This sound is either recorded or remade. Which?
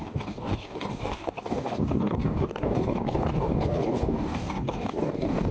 remade